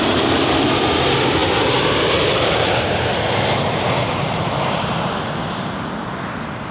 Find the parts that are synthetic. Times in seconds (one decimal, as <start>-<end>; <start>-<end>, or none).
none